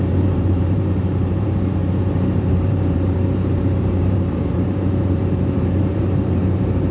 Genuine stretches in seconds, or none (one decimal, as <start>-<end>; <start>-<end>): 1.8-2.5